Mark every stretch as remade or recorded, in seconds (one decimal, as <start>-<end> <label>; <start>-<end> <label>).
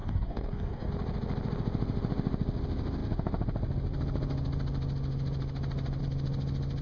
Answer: 0.0-0.9 remade; 0.9-6.8 recorded